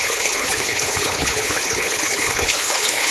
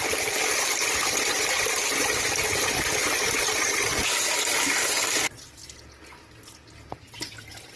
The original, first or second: second